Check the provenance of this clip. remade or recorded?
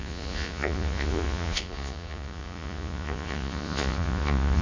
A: remade